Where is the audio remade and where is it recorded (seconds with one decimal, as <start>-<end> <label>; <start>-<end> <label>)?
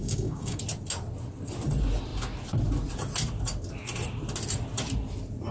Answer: 0.0-0.6 remade; 0.6-5.5 recorded